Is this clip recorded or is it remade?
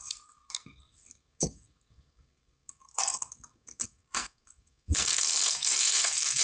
remade